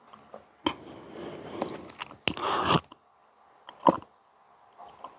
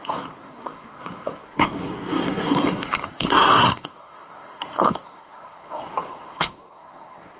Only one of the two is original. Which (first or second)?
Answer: first